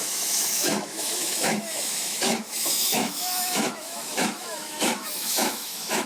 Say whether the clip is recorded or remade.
remade